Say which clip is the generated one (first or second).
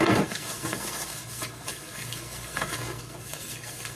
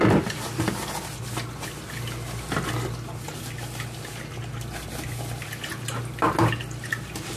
first